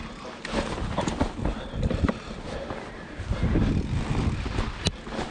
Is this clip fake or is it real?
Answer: real